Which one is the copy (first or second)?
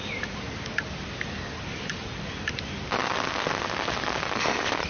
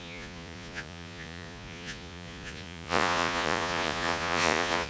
second